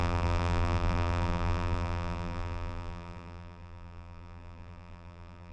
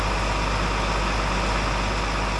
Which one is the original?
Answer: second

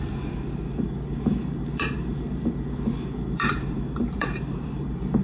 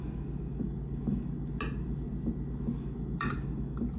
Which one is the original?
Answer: second